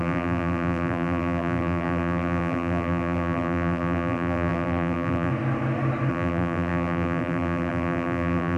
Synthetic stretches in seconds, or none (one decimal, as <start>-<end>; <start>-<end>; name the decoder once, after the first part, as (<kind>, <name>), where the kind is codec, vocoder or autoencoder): 0.0-5.3 (vocoder, BigVGAN v2); 6.1-8.6